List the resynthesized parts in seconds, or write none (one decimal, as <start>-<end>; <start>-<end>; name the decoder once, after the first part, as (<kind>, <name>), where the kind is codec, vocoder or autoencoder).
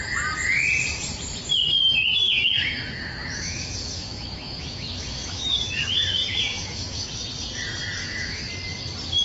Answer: 2.1-7.0 (autoencoder, DAC-VAE); 8.0-8.5